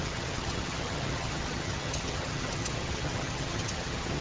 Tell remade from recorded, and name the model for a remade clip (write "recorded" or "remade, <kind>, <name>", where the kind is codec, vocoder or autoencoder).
remade, vocoder, HiFi-GAN